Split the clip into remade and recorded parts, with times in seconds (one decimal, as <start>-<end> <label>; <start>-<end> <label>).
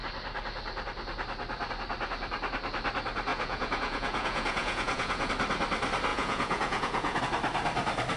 0.0-3.3 recorded; 3.3-5.3 remade; 5.3-6.1 recorded; 6.1-7.2 remade; 7.2-8.2 recorded